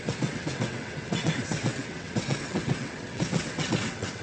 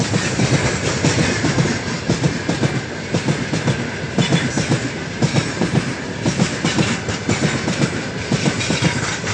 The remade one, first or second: first